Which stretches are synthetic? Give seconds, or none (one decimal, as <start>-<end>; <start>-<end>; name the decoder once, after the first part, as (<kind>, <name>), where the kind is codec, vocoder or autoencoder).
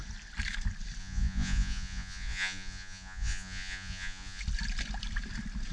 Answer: 1.0-4.4 (vocoder, Vocos)